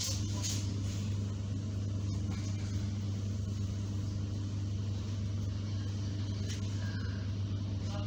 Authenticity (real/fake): real